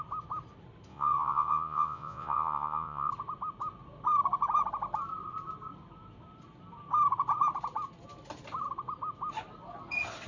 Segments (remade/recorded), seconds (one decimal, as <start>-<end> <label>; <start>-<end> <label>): 0.0-0.9 recorded; 0.9-3.1 remade; 3.1-10.3 recorded